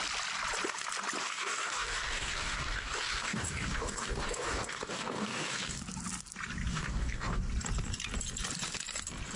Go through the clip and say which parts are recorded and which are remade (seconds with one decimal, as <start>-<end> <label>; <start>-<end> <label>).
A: 0.0-1.2 recorded; 1.2-5.8 remade; 5.8-6.7 recorded; 6.7-7.4 remade; 7.4-9.4 recorded